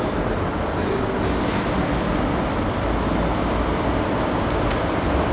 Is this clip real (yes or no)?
yes